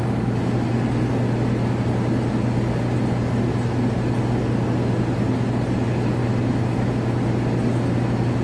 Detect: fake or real real